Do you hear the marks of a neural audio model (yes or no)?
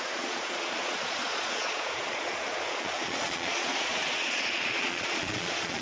yes